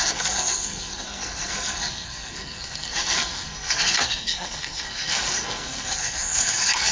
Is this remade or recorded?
remade